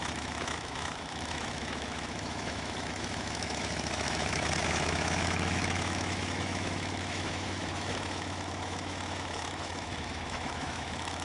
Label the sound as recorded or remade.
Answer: remade